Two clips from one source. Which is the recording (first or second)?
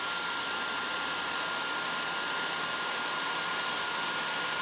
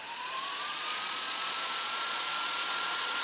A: first